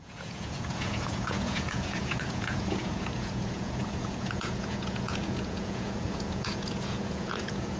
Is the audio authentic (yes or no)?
no